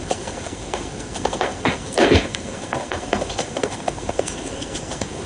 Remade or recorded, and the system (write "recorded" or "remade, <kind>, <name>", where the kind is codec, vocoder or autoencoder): remade, codec, SNAC